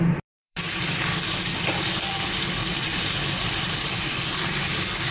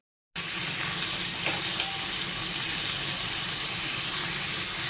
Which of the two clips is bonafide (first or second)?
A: second